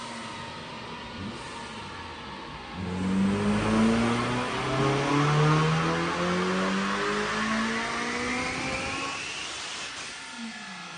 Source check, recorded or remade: recorded